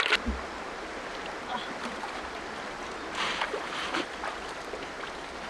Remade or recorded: recorded